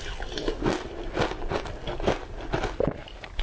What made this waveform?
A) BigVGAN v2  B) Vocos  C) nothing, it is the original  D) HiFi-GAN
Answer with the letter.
C